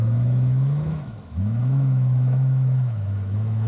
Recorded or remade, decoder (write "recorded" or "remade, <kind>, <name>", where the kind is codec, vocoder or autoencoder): remade, autoencoder, DAC-VAE